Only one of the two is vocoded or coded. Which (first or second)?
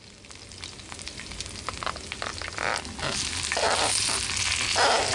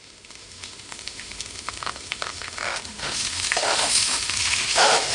second